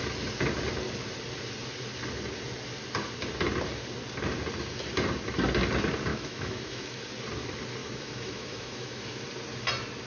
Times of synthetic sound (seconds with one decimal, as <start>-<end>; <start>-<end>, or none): 6.1-7.0; 7.8-9.2